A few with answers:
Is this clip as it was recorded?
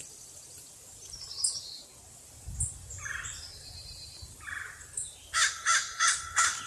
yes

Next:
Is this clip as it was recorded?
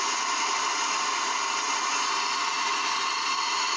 yes